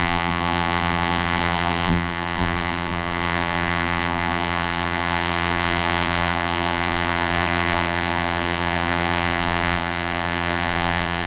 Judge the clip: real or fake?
fake